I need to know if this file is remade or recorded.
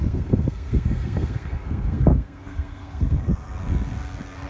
remade